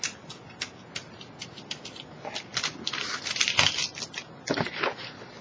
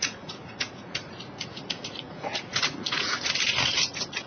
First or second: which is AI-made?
second